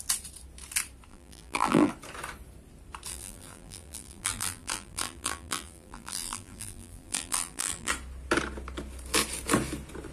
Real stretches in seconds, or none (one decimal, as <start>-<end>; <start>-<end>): 0.0-1.1; 1.9-3.1; 7.9-10.1